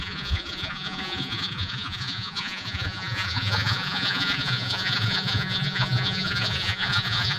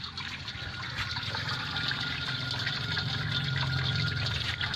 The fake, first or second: first